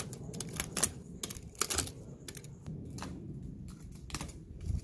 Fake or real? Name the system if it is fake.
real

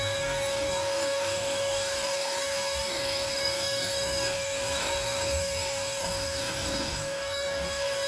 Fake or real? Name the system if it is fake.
fake, codec, DAC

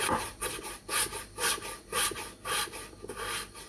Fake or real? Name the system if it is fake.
real